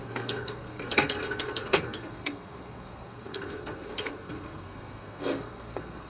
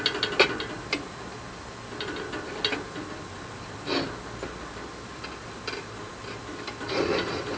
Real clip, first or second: second